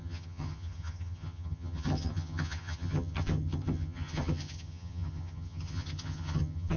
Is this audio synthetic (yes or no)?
yes